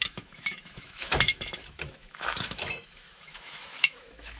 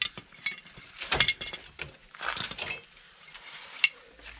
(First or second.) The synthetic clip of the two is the first